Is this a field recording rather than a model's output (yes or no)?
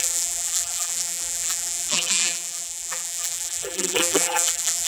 no